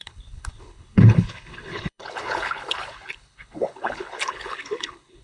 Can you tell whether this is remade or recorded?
remade